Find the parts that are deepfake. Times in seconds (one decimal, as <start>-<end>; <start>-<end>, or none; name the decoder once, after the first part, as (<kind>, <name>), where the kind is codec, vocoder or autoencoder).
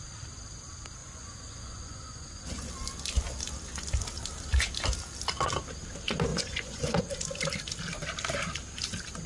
1.0-2.7 (vocoder, Vocos); 6.3-7.0